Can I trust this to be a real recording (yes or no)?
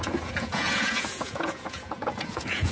no